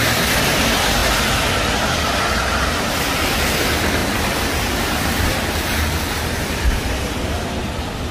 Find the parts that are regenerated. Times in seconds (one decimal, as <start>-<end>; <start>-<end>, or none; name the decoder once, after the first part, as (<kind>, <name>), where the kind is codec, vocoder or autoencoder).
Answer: 0.0-8.1 (vocoder, BigVGAN v2)